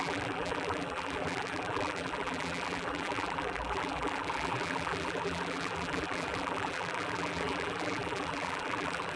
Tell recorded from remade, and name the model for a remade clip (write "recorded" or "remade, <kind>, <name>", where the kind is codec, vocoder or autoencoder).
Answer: remade, vocoder, BigVGAN v2